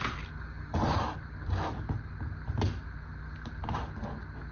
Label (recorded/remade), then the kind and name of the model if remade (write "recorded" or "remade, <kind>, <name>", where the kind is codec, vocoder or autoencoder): recorded